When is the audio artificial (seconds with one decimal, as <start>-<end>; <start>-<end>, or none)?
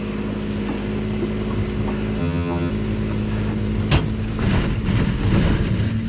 2.2-2.7